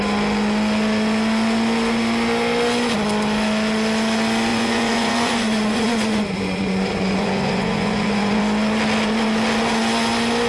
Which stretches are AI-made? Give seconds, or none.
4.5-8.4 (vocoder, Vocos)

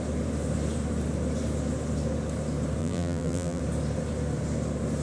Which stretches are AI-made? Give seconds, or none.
2.8-3.6 (vocoder, BigVGAN v2)